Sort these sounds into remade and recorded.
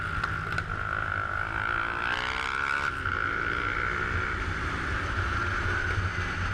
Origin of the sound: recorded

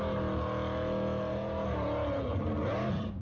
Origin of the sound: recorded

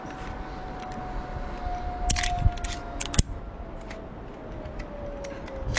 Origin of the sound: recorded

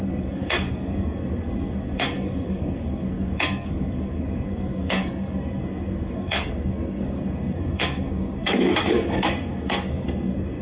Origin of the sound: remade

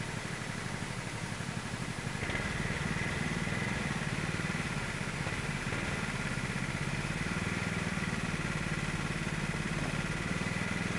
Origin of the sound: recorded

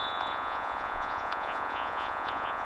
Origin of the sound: remade